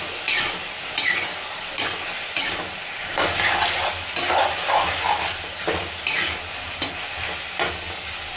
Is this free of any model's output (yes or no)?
yes